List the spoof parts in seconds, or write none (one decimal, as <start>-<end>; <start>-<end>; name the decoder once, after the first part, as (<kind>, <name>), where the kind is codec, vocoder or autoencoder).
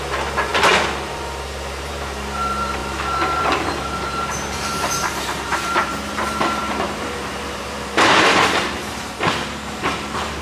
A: 0.0-10.4 (vocoder, BigVGAN v2)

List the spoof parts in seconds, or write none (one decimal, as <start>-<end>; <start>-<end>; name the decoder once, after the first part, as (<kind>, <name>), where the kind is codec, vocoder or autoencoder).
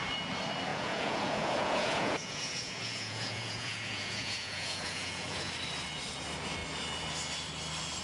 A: 0.7-5.5 (vocoder, Vocos)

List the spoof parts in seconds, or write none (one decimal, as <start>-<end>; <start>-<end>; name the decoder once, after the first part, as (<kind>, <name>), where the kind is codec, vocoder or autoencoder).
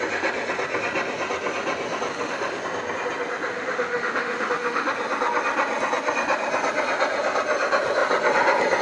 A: 2.1-2.6 (autoencoder, DAC-VAE); 3.5-4.9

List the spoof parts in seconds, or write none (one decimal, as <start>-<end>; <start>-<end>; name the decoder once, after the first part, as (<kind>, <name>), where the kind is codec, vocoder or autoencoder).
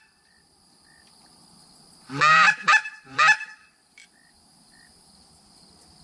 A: 2.3-3.8 (vocoder, BigVGAN v2)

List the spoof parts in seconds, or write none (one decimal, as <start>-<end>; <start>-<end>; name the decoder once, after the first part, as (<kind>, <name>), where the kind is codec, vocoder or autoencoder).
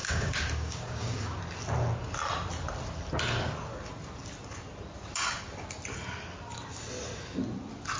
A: 0.0-1.4 (codec, DAC)